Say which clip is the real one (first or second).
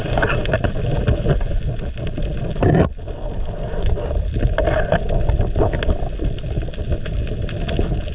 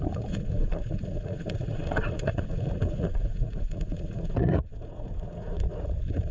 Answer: first